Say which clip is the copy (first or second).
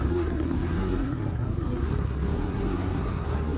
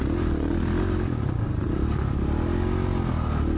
first